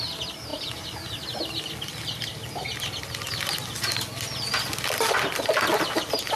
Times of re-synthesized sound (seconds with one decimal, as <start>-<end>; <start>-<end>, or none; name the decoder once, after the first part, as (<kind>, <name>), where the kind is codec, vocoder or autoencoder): none